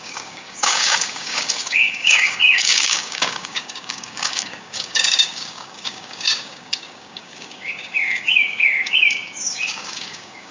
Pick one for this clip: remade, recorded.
remade